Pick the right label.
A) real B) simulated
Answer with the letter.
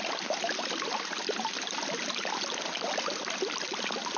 A